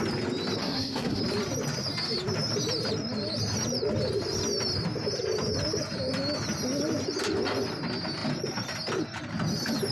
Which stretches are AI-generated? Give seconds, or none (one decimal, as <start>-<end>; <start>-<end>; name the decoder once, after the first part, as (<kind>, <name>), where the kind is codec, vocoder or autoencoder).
0.6-1.2 (codec, SNAC)